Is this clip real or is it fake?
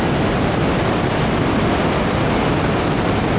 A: real